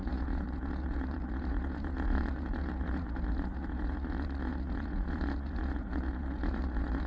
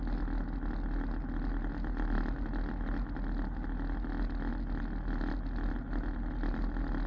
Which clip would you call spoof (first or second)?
first